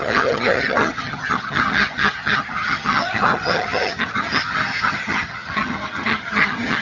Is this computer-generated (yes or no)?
yes